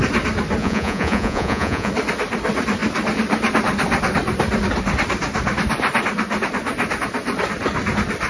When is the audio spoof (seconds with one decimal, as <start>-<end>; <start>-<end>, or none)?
0.6-1.9